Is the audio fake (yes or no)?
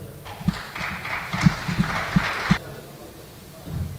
no